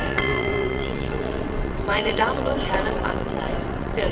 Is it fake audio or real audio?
fake